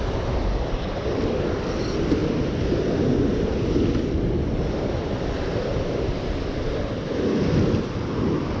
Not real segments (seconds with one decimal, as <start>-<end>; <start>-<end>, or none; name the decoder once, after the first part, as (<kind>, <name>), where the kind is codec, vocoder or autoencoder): none